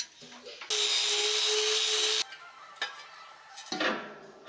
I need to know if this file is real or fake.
real